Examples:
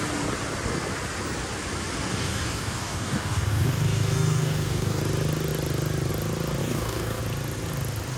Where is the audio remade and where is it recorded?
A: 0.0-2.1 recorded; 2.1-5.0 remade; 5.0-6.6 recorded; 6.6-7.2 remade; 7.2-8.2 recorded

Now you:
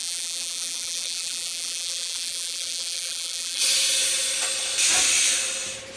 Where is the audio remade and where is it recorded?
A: 0.0-3.6 remade; 3.6-6.0 recorded

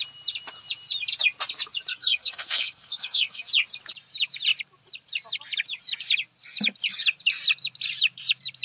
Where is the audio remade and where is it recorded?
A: 0.0-1.9 recorded; 1.9-3.5 remade; 3.5-8.6 recorded

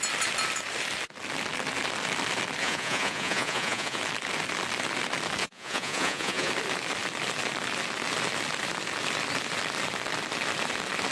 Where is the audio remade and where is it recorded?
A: 0.0-2.6 recorded; 2.6-4.0 remade; 4.0-5.4 recorded; 5.4-6.5 remade; 6.5-11.1 recorded